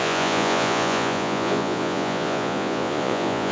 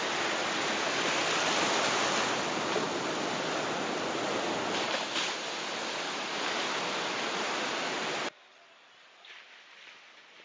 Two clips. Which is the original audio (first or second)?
second